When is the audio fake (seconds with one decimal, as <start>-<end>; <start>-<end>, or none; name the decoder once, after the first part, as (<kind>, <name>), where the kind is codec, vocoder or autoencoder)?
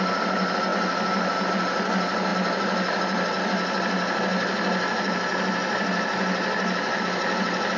none